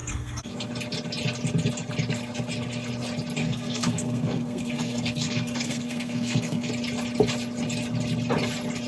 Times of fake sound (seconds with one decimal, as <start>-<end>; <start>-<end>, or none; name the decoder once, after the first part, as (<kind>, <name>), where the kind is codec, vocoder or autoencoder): 0.0-0.7 (codec, SNAC); 3.4-6.7